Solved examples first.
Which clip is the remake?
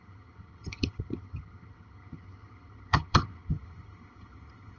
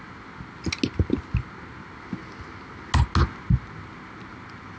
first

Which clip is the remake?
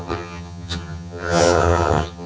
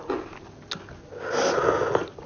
first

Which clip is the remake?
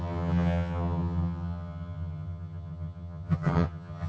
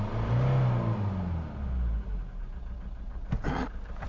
first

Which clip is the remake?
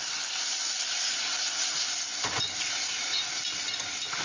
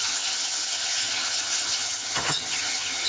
second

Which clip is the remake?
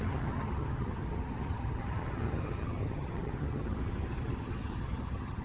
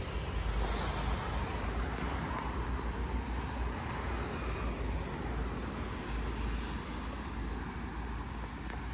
first